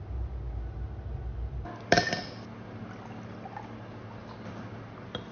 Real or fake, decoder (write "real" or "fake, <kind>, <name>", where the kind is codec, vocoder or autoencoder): real